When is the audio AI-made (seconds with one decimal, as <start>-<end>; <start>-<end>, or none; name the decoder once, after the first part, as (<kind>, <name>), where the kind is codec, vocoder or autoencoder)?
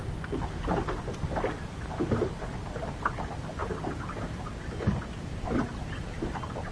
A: none